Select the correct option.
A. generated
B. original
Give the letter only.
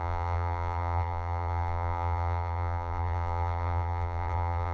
A